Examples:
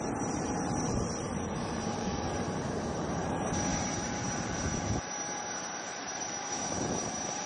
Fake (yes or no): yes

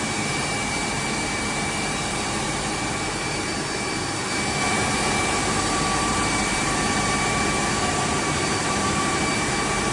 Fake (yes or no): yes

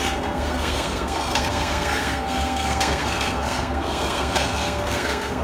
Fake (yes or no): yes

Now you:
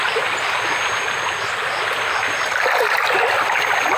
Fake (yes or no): no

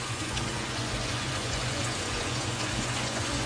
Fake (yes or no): yes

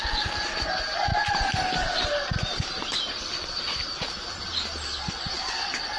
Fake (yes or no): no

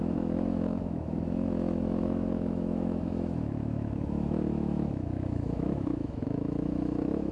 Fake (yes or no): yes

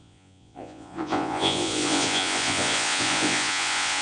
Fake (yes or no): yes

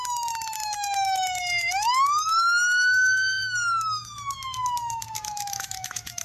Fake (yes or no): yes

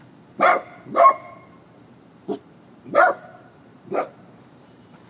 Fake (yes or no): yes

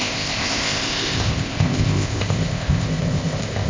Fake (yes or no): yes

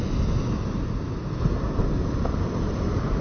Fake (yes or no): no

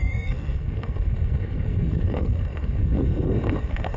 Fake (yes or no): yes